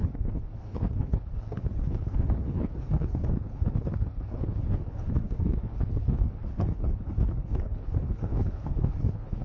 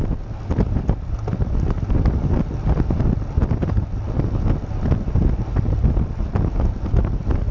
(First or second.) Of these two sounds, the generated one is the first